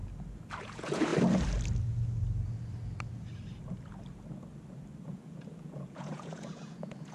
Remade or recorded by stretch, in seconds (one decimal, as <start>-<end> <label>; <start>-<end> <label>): 0.0-0.6 recorded; 0.6-1.1 remade; 1.1-5.1 recorded; 5.1-7.1 remade

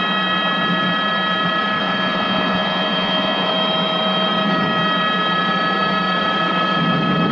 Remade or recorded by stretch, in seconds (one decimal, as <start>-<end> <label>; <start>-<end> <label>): 0.0-1.8 recorded; 1.8-3.5 remade; 3.5-7.3 recorded

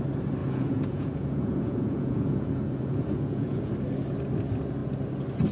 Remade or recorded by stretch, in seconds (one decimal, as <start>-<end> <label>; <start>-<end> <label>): 0.0-0.4 recorded; 0.4-3.7 remade; 3.7-5.5 recorded

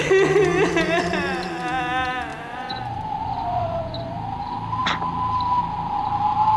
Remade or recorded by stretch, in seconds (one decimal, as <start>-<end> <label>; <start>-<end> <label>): 0.0-2.3 recorded; 2.3-4.1 remade; 4.1-6.6 recorded

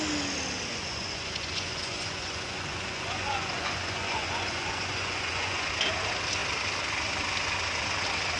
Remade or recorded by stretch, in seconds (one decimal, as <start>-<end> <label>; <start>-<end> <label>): 0.0-0.7 recorded; 0.7-5.7 remade; 5.7-8.4 recorded

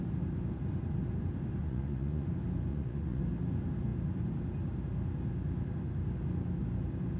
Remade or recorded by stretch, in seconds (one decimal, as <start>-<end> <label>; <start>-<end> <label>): 0.0-1.6 recorded; 1.6-2.3 remade; 2.3-2.7 recorded; 2.7-3.2 remade; 3.2-7.2 recorded

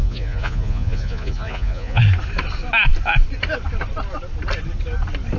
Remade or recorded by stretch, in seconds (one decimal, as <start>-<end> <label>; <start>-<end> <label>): 0.0-2.0 remade; 2.0-5.4 recorded